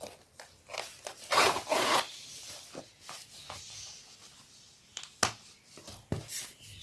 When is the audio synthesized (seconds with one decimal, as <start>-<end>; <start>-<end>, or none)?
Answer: 0.7-2.8